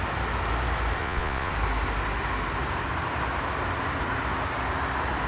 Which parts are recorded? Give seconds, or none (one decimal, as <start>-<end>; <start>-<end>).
0.0-1.0; 1.5-5.3